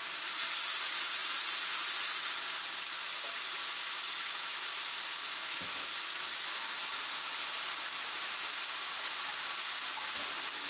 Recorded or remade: recorded